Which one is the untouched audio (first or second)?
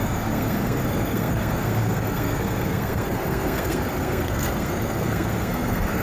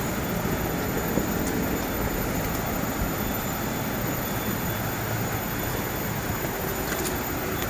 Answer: second